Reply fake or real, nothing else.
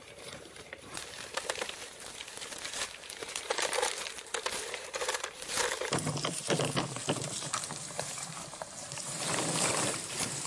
fake